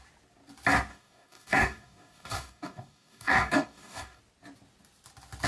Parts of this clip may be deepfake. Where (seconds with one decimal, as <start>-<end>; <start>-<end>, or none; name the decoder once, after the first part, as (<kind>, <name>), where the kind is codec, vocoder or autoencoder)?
0.9-4.2 (codec, DAC)